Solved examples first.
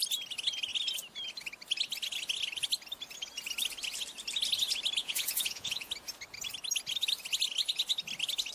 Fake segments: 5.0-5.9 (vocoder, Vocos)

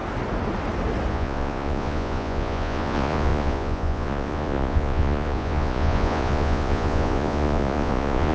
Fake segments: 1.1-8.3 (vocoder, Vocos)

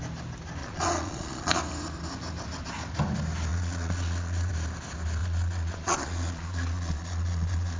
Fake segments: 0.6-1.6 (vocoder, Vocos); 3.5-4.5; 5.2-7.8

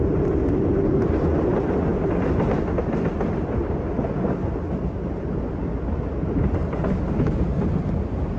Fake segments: none

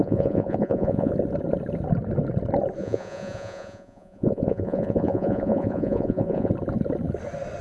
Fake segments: 0.0-1.1 (vocoder, Vocos); 2.8-6.5